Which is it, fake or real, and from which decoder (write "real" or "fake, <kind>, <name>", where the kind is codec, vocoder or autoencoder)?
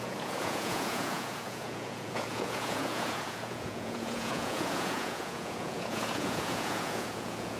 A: fake, vocoder, Vocos